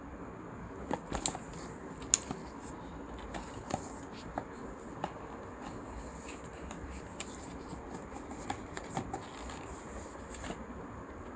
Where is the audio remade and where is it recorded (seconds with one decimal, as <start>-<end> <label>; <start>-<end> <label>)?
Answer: 0.0-11.4 recorded